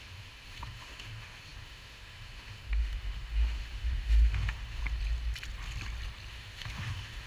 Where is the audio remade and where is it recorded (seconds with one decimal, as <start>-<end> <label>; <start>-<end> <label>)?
0.0-4.8 remade; 4.8-6.3 recorded; 6.3-7.3 remade